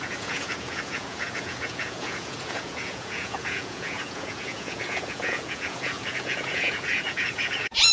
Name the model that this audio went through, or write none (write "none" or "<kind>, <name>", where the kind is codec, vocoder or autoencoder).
vocoder, Vocos